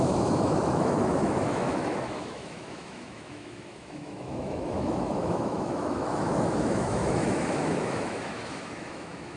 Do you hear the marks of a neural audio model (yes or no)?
yes